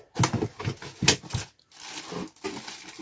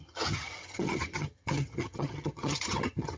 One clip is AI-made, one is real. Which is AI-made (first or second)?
second